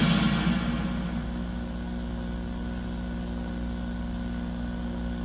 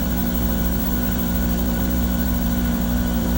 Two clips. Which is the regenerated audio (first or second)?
second